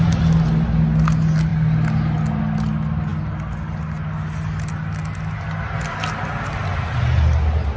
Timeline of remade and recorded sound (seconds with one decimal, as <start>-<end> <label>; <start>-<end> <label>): 0.0-7.8 recorded

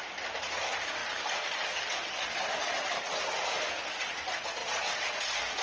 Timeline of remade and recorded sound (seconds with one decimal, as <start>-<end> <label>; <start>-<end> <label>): 0.0-5.6 recorded

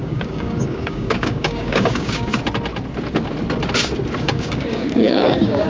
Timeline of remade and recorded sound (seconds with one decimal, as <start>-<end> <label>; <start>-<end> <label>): 0.0-2.3 remade; 2.3-4.2 recorded; 4.2-5.7 remade

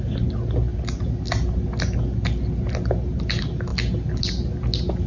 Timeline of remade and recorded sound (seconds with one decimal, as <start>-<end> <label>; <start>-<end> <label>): 0.0-5.1 recorded